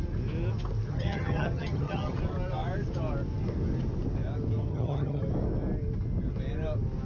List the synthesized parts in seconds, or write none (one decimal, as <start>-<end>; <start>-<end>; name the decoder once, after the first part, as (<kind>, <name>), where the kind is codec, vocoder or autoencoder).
0.9-2.2 (vocoder, HiFi-GAN); 4.7-5.2